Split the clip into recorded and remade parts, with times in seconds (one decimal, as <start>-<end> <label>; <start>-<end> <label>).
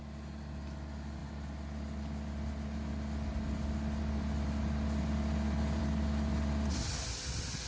0.0-7.7 recorded